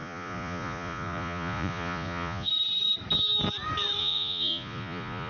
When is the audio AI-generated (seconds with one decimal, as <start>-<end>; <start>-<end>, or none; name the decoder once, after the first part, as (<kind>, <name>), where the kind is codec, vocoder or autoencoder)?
0.0-2.5 (vocoder, Vocos); 4.0-5.3